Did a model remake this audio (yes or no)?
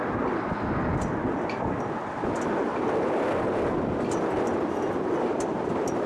no